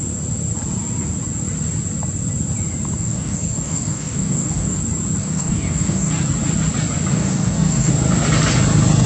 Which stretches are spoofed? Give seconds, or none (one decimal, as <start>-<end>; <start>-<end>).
3.0-4.8; 5.2-6.1; 7.1-7.9